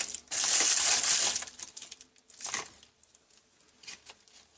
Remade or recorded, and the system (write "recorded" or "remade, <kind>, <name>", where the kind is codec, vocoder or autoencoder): recorded